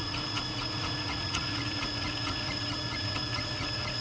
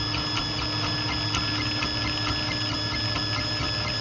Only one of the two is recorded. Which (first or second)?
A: second